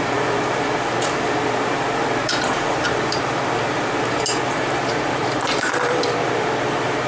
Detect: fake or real fake